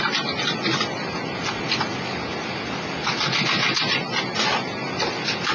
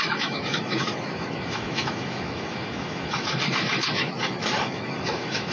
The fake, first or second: second